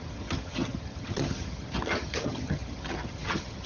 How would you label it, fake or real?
fake